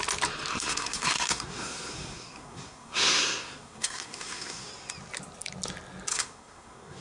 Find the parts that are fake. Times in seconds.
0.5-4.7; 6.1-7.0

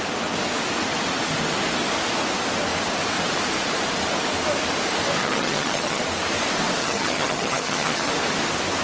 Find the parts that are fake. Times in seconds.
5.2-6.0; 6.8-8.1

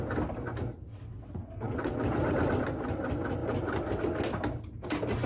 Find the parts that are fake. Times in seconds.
0.9-2.0

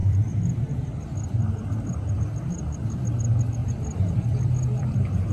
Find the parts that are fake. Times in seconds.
0.0-3.2; 3.6-5.3

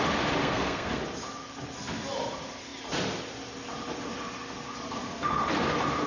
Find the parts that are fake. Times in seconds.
0.4-1.0